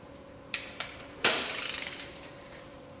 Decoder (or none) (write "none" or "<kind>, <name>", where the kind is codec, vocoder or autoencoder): vocoder, BigVGAN v2